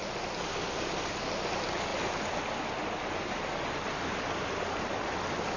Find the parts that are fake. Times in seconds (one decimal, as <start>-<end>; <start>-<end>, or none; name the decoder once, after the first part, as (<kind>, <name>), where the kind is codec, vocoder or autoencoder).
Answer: none